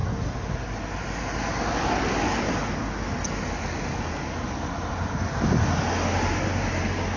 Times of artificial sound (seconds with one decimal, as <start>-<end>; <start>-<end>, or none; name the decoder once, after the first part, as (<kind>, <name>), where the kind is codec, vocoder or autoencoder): none